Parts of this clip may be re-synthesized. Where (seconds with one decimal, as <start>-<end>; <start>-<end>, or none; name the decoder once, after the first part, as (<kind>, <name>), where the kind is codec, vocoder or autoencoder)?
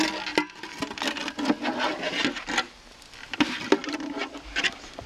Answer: none